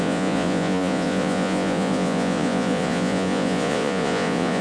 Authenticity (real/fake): fake